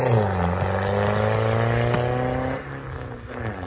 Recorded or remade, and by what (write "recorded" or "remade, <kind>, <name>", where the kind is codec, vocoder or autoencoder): recorded